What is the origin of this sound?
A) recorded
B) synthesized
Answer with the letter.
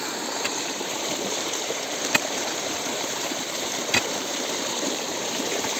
B